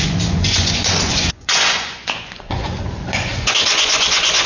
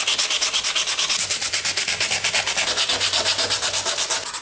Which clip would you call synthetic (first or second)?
first